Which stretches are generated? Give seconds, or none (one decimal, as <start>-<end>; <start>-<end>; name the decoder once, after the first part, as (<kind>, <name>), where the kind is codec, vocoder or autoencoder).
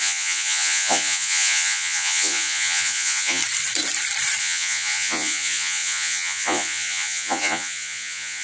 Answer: 0.0-3.4 (vocoder, Vocos); 4.4-8.4